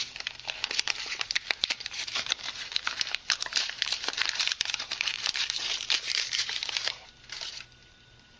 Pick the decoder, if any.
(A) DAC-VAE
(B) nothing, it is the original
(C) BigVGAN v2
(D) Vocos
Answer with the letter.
C